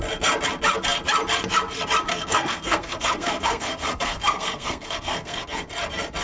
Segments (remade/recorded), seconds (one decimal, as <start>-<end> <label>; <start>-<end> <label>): 0.0-2.1 recorded; 2.1-5.6 remade; 5.6-6.2 recorded